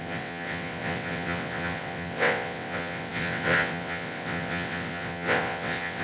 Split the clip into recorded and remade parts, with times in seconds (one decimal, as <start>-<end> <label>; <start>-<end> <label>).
0.0-6.0 remade